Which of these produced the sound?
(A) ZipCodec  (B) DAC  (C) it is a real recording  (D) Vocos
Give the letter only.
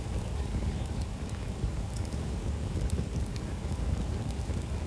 B